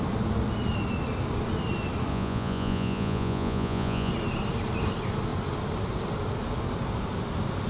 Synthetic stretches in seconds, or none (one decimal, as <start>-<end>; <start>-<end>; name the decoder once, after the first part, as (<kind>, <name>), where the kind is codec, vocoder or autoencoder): 2.1-4.1 (vocoder, Vocos)